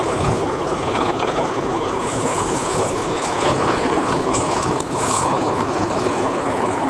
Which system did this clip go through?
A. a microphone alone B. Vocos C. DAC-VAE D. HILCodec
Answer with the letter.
D